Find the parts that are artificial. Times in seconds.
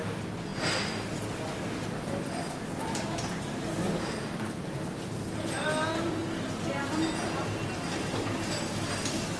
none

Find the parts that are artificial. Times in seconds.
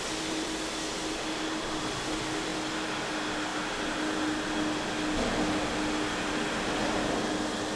none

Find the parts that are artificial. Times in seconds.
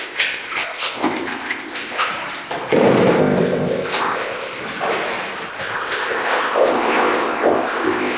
0.0-2.1 (codec, ZipCodec); 3.2-4.6; 5.5-8.2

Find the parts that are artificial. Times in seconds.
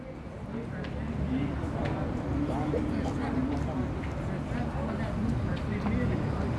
1.8-3.4 (vocoder, BigVGAN v2)